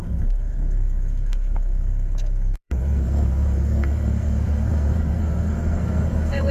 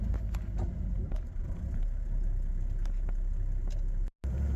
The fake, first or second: first